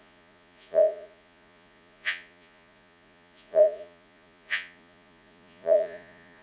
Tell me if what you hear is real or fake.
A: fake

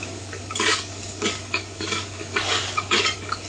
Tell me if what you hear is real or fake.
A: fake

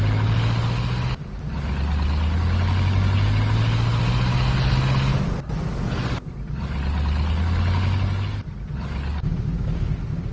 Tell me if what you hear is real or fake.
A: real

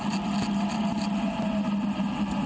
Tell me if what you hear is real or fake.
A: real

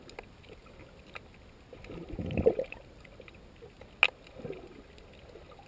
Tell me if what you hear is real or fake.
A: real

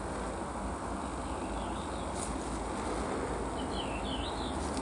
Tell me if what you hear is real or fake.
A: real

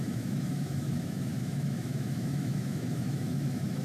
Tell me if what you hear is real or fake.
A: fake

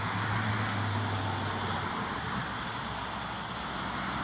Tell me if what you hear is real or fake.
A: real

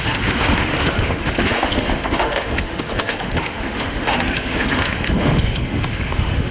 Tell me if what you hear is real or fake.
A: fake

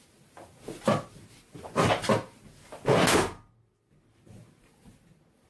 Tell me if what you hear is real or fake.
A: real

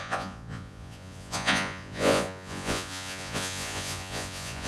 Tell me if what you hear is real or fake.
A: fake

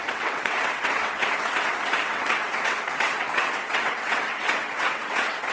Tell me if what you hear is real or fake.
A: fake